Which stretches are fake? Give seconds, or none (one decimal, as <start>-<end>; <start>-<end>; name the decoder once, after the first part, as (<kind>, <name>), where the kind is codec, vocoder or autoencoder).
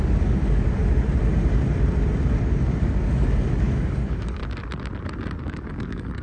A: 0.0-0.8 (codec, DAC); 2.4-4.4; 5.4-6.2